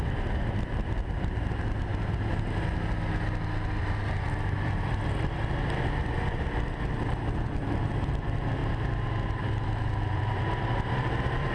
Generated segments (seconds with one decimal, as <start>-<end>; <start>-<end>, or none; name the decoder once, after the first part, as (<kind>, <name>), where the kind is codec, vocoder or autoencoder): 0.0-1.9 (vocoder, BigVGAN v2); 3.8-8.6; 9.4-11.5